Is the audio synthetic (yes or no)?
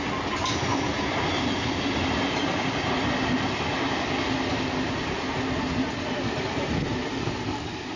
no